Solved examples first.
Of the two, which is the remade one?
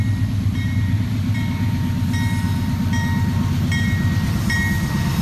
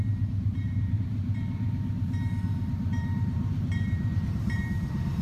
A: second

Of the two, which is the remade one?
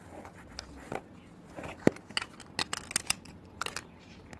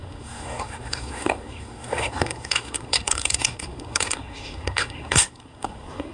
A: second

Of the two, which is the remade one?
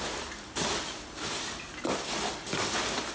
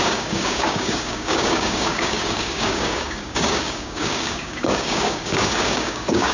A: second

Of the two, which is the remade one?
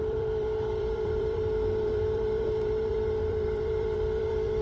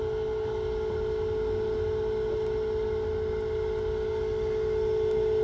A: first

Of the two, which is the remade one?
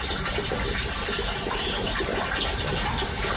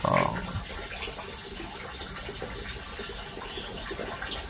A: first